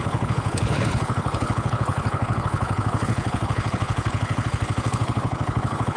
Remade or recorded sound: remade